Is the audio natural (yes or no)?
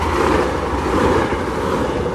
yes